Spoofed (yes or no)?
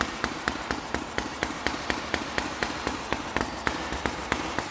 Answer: yes